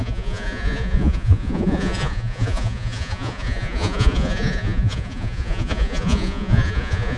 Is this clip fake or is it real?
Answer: fake